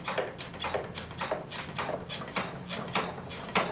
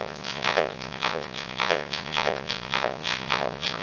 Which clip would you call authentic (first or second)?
first